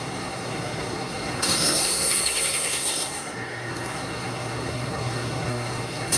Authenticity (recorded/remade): remade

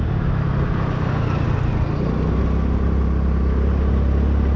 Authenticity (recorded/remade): recorded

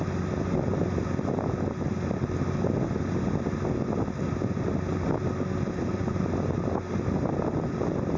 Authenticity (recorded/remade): recorded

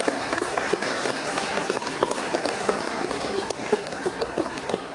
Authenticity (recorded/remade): remade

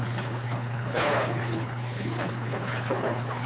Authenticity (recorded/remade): remade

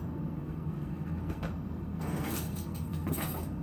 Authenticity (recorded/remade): remade